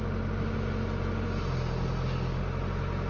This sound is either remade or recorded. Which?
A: recorded